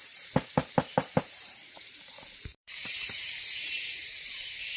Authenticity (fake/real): fake